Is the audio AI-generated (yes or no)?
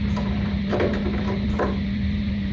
no